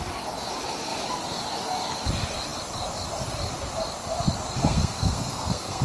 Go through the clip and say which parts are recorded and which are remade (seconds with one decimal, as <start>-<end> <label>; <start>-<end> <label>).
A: 0.0-4.6 recorded; 4.6-5.8 remade